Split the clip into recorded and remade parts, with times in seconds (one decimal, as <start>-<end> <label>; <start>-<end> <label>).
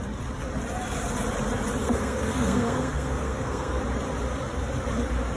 0.0-1.8 recorded; 1.8-3.8 remade; 3.8-5.4 recorded